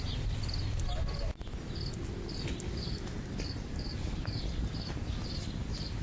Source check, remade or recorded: recorded